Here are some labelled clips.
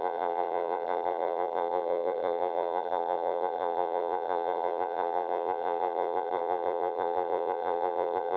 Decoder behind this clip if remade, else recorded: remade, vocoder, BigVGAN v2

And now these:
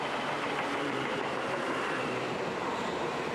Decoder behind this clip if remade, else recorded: remade, vocoder, BigVGAN v2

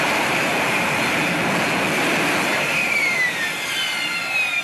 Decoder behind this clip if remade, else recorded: recorded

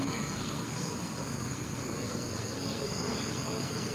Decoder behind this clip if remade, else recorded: remade, codec, SNAC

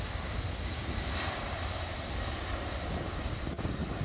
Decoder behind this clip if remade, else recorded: recorded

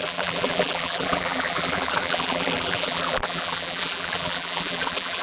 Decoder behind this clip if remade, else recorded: remade, vocoder, BigVGAN v2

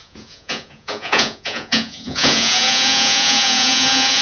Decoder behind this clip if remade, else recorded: remade, vocoder, Vocos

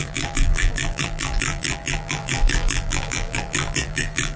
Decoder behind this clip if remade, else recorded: remade, vocoder, BigVGAN v2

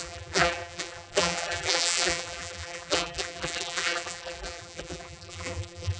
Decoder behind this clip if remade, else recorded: remade, vocoder, BigVGAN v2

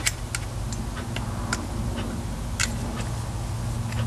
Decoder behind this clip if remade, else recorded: recorded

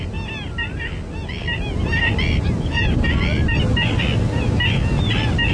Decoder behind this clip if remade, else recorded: recorded